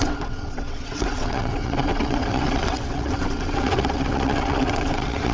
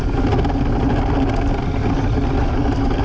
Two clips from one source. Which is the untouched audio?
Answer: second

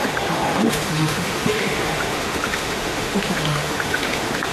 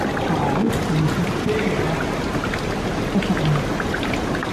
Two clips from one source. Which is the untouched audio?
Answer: second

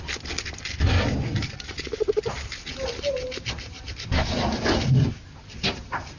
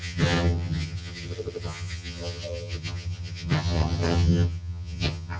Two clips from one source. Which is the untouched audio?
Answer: first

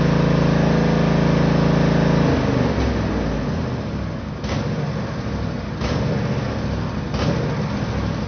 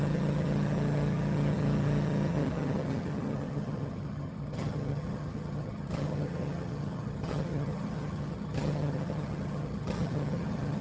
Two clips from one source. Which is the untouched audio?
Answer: first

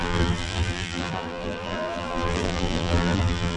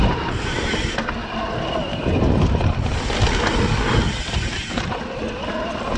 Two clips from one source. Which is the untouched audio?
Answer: second